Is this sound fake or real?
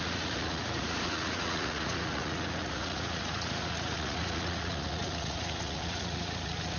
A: fake